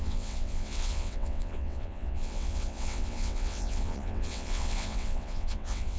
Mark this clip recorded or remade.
remade